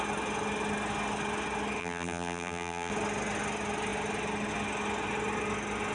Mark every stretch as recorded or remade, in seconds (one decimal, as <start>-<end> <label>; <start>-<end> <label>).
0.0-1.8 recorded; 1.8-2.9 remade; 2.9-5.9 recorded